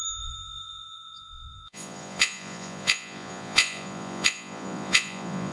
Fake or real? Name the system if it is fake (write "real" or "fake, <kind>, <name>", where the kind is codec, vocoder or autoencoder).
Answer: fake, vocoder, Vocos